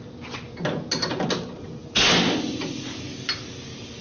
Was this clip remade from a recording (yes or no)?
no